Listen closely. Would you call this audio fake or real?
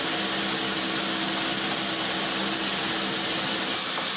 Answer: real